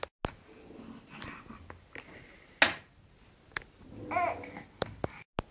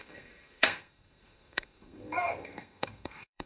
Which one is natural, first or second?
first